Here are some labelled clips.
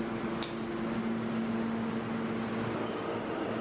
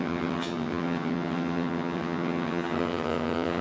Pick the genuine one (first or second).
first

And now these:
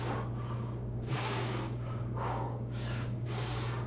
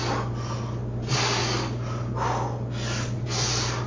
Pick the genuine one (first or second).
second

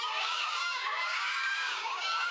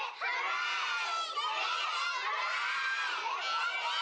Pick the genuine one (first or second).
second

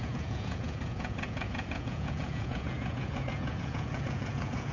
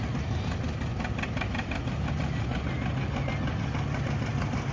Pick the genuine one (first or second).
second